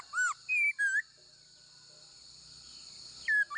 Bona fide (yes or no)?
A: yes